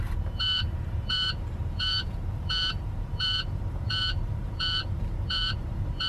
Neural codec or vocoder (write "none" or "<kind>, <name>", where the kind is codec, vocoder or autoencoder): vocoder, BigVGAN v2